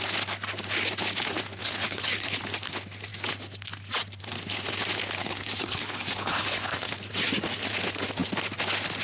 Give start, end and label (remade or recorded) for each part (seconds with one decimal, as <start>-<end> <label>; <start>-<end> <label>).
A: 0.0-1.6 recorded; 1.6-2.4 remade; 2.4-5.2 recorded; 5.2-6.9 remade; 6.9-9.0 recorded